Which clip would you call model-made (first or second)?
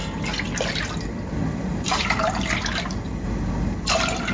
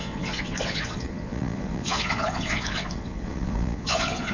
second